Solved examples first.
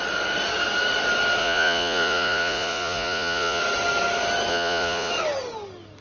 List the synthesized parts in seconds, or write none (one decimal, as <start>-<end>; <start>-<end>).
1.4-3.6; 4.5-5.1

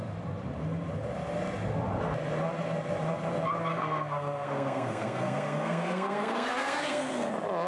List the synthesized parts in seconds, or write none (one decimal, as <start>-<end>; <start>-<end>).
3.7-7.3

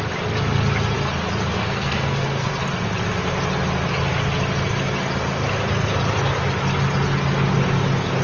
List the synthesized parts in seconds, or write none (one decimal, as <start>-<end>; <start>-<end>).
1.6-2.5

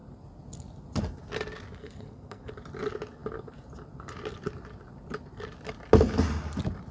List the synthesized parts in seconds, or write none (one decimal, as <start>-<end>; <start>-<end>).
1.8-2.5

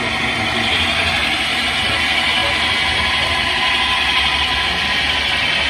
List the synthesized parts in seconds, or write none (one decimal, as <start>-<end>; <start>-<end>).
1.2-1.9

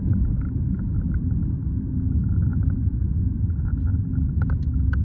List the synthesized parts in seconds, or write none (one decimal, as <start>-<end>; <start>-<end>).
2.5-3.7

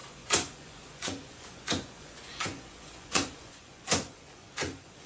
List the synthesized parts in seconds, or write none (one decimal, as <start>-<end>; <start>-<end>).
0.0-5.1

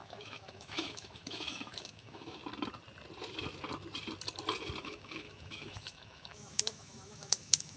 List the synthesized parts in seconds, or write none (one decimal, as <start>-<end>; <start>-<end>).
0.0-2.4; 4.8-7.8